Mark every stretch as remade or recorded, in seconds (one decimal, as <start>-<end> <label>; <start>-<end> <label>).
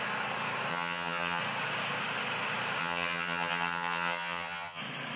0.0-0.7 recorded; 0.7-1.4 remade; 1.4-2.8 recorded; 2.8-4.8 remade; 4.8-5.2 recorded